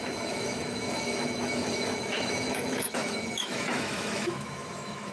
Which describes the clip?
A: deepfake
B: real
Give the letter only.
A